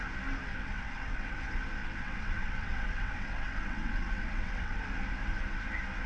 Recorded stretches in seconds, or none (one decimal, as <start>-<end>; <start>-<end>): 0.0-0.5; 1.4-1.8; 4.8-6.1